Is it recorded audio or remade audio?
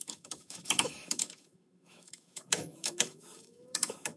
remade